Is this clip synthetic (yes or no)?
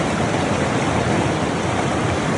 no